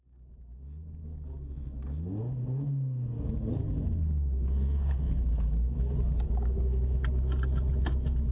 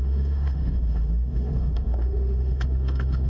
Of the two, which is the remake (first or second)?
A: second